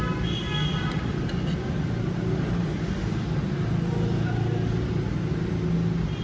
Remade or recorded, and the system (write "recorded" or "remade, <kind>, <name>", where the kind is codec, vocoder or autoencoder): recorded